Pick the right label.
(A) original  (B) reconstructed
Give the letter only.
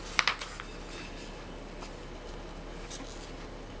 A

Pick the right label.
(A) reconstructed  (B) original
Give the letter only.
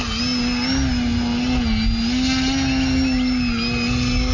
B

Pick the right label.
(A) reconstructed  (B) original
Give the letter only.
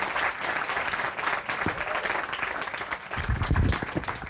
B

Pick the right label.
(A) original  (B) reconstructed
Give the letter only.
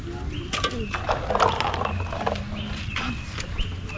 A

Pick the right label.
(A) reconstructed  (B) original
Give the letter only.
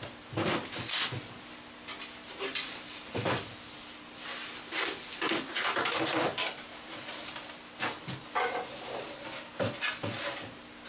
B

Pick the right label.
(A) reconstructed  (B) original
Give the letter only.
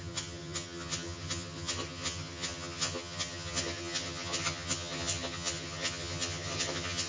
A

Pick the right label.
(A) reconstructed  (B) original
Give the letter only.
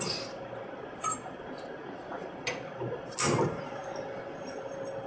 B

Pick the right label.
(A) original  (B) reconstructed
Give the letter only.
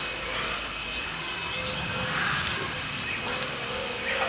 A